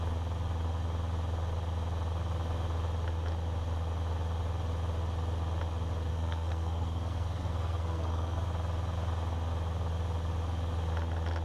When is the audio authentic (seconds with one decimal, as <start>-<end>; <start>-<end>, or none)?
0.0-6.1; 8.5-11.4